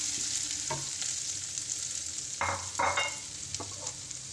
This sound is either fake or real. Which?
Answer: real